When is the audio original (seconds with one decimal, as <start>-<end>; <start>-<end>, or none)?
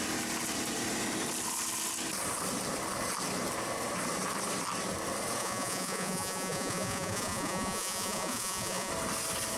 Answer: 0.0-5.4; 8.9-9.6